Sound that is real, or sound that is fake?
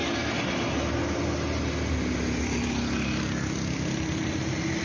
real